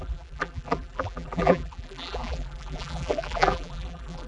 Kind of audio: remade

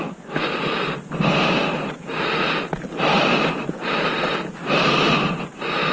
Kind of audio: recorded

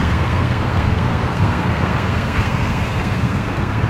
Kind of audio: remade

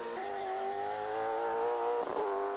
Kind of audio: recorded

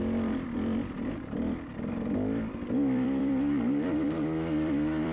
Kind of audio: remade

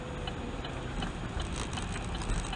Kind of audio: recorded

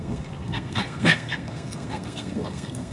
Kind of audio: remade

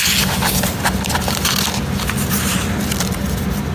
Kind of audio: recorded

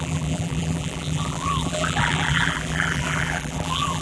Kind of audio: remade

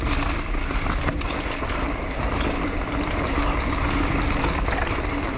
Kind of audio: recorded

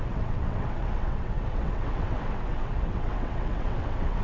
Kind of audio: remade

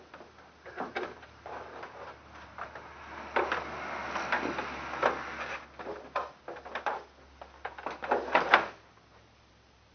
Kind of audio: recorded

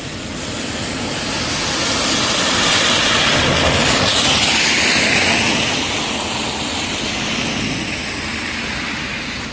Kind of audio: recorded